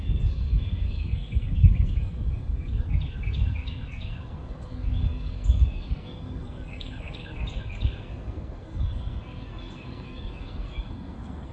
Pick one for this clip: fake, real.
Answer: fake